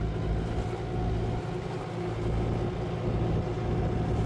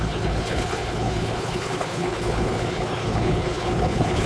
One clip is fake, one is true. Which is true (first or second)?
first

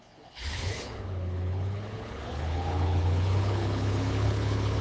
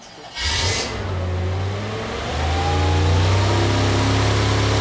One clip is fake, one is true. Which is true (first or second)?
second